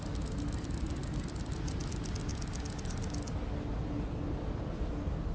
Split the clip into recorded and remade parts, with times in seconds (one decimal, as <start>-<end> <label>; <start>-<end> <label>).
0.0-5.3 recorded